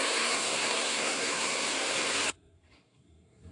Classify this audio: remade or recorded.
remade